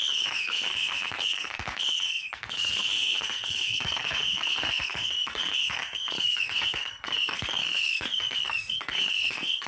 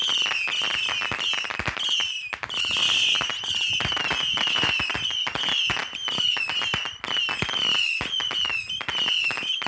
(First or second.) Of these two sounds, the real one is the second